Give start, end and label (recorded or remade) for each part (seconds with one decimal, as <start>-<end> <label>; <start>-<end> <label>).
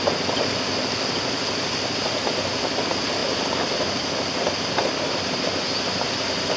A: 0.0-6.6 recorded